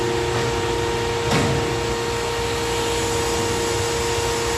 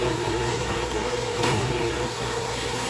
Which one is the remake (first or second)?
second